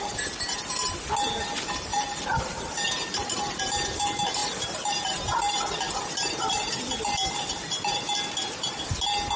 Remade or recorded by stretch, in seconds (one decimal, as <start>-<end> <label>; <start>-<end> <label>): 0.0-1.9 recorded; 1.9-3.6 remade; 3.6-4.4 recorded; 4.4-6.7 remade; 6.7-9.4 recorded